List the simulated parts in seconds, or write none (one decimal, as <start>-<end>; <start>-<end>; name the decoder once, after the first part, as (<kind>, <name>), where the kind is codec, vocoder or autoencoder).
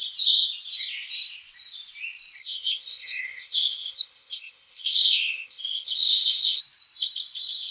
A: 2.4-6.6 (codec, ZipCodec)